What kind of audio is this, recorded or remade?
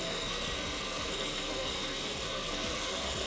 remade